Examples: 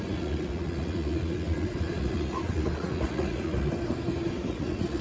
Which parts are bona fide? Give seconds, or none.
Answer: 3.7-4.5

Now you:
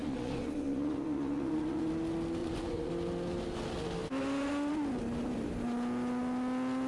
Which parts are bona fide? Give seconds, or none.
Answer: 1.9-2.4; 2.9-6.9

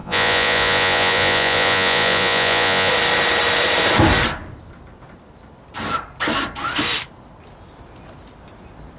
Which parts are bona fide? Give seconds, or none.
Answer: 2.9-9.0

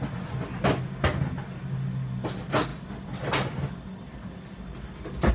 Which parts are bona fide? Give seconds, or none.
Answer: 0.0-5.3

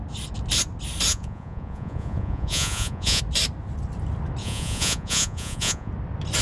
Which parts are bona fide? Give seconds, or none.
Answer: 0.0-1.1; 3.2-4.4; 5.9-6.4

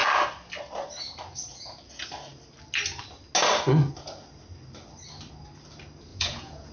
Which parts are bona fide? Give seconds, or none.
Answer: 0.0-6.1

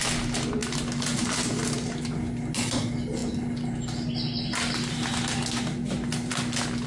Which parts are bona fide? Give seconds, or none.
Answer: 0.0-6.9